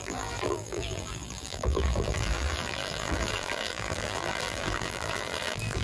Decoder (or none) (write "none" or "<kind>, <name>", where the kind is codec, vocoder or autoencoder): vocoder, BigVGAN v2